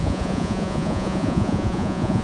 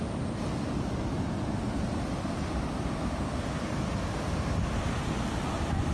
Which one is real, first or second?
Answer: second